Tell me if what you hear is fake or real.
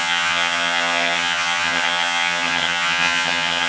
fake